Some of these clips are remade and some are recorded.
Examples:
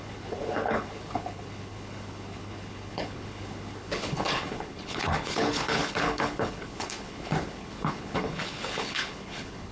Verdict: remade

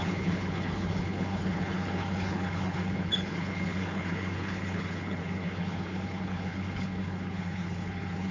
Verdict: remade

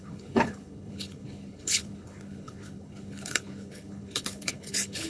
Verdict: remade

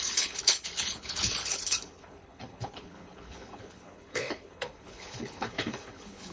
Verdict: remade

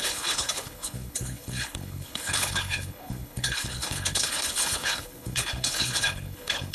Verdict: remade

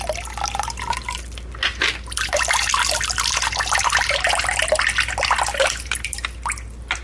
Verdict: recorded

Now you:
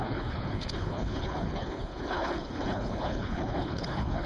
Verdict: remade